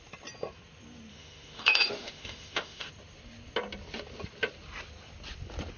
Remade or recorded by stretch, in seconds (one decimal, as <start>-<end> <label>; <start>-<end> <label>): 0.0-1.1 recorded; 1.1-2.9 remade; 2.9-5.8 recorded